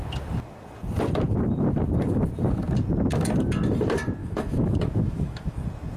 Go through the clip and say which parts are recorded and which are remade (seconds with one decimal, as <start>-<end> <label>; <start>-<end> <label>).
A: 0.0-4.2 recorded; 4.2-5.6 remade; 5.6-6.0 recorded